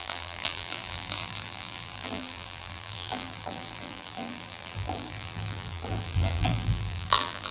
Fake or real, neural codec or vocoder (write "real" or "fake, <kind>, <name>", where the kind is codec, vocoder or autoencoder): fake, vocoder, BigVGAN v2